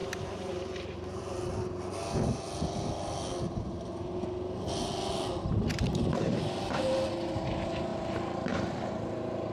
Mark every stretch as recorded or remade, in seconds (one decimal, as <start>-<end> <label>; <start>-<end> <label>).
0.0-1.2 remade; 1.2-7.9 recorded; 7.9-8.6 remade; 8.6-9.5 recorded